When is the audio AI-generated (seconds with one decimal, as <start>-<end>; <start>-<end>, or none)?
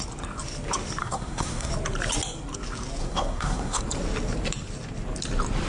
1.0-1.7; 3.0-3.8